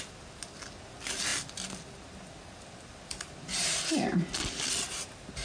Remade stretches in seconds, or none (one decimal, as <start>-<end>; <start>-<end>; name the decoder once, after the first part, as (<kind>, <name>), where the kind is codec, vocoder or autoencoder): none